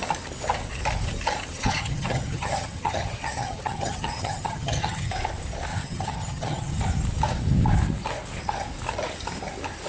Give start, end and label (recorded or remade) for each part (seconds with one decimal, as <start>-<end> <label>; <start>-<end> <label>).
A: 0.0-1.5 recorded; 1.5-5.1 remade; 5.1-5.7 recorded; 5.7-6.8 remade; 6.8-9.9 recorded